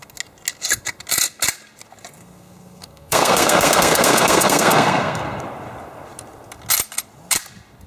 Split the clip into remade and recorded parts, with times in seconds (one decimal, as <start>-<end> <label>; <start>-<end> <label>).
0.0-2.2 recorded; 2.2-5.4 remade; 5.4-7.9 recorded